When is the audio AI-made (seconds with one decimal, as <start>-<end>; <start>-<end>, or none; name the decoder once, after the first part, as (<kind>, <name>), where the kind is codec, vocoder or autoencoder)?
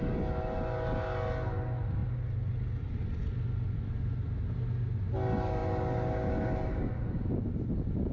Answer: none